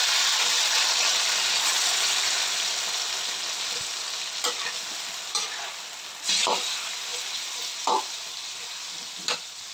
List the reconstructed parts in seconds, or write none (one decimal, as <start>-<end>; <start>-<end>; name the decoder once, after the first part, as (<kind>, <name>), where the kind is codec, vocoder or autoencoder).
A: none